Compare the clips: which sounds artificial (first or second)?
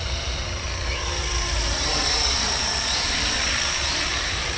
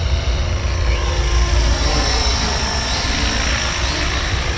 first